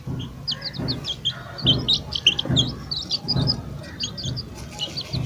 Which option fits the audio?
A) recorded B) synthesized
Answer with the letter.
A